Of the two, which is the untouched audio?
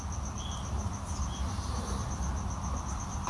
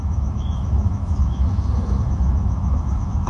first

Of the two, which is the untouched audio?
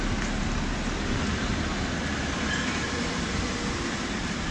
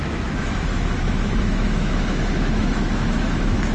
first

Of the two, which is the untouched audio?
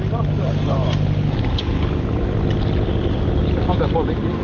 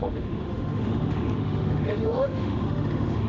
first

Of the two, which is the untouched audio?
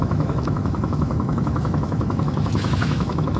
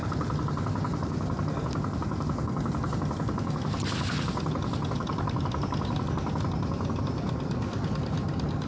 second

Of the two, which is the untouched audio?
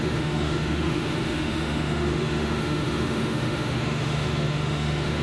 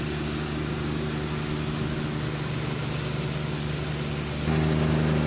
second